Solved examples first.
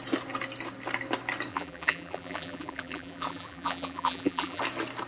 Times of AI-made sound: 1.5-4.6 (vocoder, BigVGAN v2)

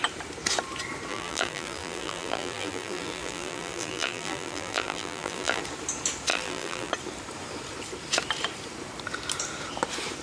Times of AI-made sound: 1.1-5.6 (vocoder, BigVGAN v2); 6.3-6.9